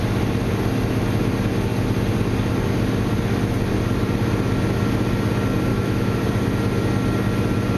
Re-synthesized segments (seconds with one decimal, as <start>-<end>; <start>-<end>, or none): 5.7-6.2